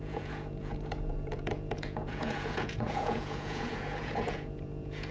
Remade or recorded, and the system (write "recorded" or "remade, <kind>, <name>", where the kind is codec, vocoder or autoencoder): remade, vocoder, Vocos